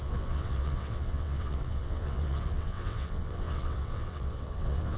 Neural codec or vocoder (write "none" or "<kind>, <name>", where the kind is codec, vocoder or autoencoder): vocoder, WaveNeXt